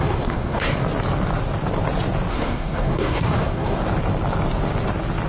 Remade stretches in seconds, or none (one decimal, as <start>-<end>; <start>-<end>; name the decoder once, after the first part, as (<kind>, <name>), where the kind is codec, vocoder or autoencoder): 0.0-0.8 (codec, SNAC); 2.3-3.8

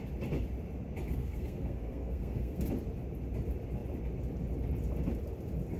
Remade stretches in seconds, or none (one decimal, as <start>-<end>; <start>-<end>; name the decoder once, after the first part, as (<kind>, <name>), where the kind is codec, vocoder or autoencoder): 1.1-2.6 (codec, SNAC)

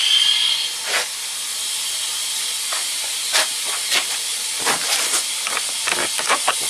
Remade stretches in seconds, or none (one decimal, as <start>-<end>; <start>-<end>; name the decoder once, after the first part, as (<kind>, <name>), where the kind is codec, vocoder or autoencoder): 2.4-6.7 (vocoder, BigVGAN v2)